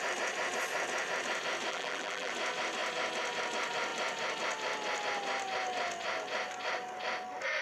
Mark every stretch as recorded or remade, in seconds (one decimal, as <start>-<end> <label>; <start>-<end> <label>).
0.0-1.7 recorded; 1.7-2.3 remade; 2.3-7.6 recorded